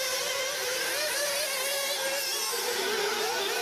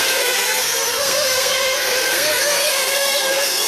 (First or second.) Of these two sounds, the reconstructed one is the second